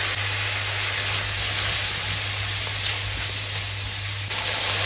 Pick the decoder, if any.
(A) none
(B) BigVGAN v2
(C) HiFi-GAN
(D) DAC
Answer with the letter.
A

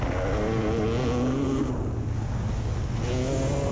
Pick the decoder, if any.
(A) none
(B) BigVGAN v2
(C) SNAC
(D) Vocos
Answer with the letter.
A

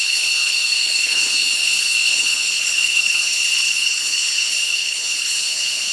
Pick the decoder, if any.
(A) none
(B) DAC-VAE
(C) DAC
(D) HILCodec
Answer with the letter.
D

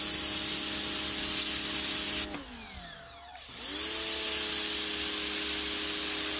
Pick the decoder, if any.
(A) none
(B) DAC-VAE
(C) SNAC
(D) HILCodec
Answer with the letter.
A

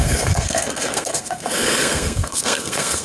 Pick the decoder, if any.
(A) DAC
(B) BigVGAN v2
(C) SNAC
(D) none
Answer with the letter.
C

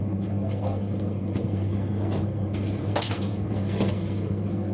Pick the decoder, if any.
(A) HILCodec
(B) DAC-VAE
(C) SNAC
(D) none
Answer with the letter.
C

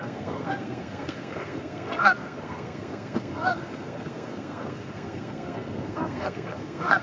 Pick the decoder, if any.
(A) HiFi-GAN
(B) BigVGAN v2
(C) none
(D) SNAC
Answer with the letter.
D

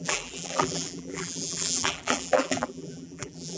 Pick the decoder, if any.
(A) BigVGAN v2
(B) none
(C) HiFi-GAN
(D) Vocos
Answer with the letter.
A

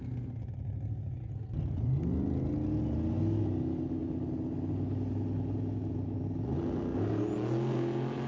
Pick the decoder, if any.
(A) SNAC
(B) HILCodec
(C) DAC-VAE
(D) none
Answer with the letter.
D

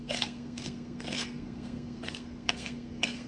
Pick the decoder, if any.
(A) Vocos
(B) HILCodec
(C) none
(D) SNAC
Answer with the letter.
D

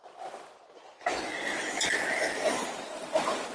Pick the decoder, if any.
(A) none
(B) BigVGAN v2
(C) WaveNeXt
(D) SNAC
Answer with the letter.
A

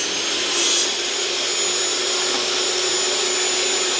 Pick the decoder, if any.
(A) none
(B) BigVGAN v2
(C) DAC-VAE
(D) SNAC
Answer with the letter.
A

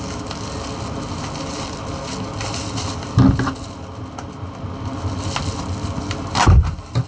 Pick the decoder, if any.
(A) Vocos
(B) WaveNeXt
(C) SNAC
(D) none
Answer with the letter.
D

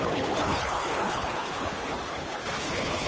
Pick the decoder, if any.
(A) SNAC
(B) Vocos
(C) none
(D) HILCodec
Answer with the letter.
D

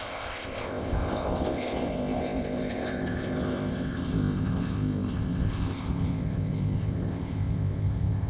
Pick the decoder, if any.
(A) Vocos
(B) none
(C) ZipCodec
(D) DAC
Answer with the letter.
C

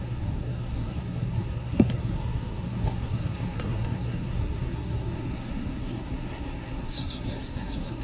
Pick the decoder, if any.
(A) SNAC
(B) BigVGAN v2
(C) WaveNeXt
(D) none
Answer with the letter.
A